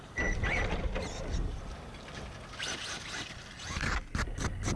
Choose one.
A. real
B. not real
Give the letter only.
A